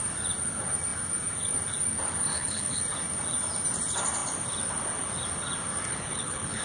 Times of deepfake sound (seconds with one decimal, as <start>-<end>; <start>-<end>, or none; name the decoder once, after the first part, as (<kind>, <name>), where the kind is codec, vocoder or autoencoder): 2.3-2.8 (codec, HILCodec); 5.9-6.6